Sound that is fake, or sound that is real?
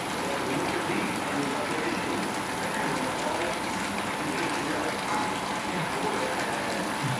real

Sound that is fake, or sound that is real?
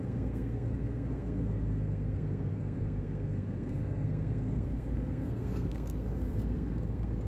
fake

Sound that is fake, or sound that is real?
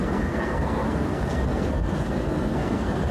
fake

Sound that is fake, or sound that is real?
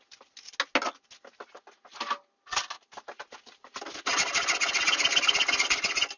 real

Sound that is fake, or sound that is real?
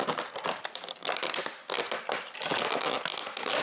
real